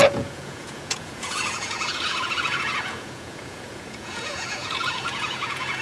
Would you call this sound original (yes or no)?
no